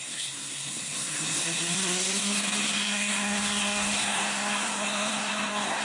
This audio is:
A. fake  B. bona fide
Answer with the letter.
A